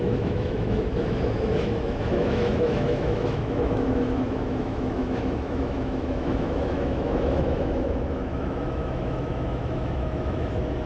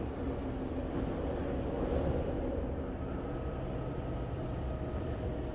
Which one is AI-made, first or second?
first